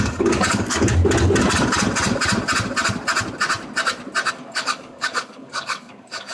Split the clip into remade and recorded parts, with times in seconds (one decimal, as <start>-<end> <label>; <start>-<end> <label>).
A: 0.0-1.0 remade; 1.0-4.3 recorded; 4.3-6.3 remade